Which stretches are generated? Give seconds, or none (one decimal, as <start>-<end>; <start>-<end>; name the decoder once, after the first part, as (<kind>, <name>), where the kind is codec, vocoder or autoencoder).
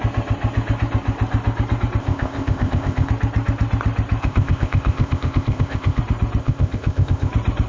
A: 2.0-3.1 (codec, ZipCodec); 4.2-6.0; 6.4-7.3